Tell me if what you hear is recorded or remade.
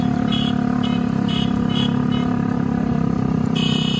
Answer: remade